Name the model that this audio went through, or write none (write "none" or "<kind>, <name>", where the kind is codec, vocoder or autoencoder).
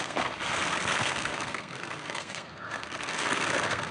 codec, SNAC